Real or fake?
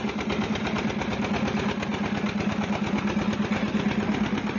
real